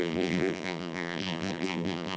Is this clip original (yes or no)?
no